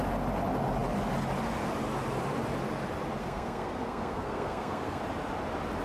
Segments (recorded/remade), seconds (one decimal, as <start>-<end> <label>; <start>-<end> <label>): 0.0-3.2 recorded; 3.2-5.0 remade; 5.0-5.8 recorded